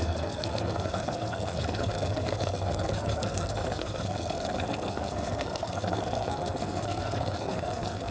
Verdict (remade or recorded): remade